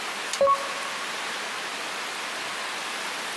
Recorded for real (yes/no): yes